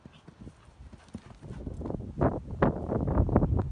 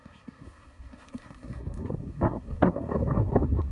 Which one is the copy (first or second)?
second